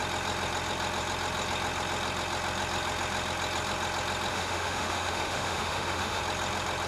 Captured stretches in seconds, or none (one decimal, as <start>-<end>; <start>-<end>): 0.0-4.3; 6.2-6.9